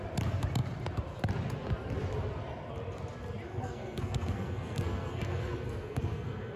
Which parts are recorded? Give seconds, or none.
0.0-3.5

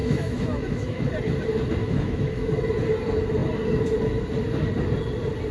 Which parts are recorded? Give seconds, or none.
1.1-1.8; 2.5-5.5